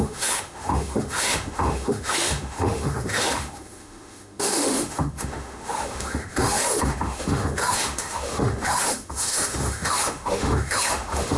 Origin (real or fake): fake